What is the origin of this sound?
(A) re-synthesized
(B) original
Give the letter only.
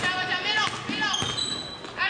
B